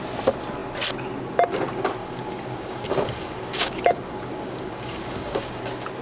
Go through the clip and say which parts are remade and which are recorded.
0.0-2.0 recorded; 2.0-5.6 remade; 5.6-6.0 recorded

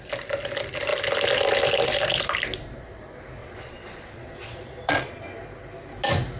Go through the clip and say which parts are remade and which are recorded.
0.0-3.4 recorded; 3.4-5.2 remade; 5.2-6.4 recorded

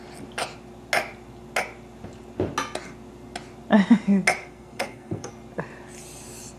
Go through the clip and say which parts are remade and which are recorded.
0.0-4.4 recorded; 4.4-5.3 remade; 5.3-6.6 recorded

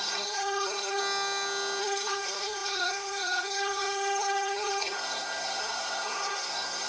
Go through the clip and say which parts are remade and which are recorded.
0.0-1.0 remade; 1.0-1.8 recorded; 1.8-6.9 remade

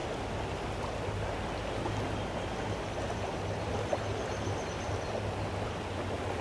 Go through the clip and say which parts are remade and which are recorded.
0.0-6.4 recorded